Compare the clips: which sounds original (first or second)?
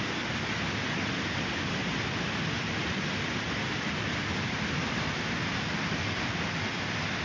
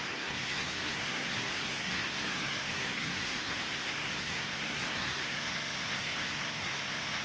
first